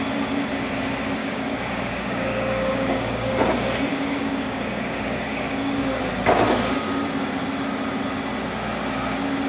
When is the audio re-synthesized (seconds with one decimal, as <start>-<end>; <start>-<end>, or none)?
1.2-3.3; 3.9-6.0